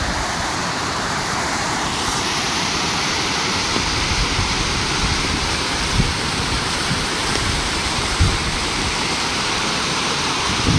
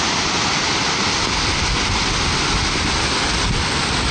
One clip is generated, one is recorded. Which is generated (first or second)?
first